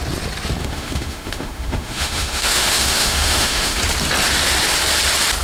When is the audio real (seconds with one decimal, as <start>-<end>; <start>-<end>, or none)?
0.0-0.6; 3.8-5.4